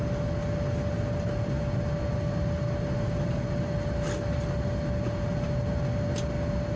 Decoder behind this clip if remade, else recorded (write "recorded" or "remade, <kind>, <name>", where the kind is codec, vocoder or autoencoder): recorded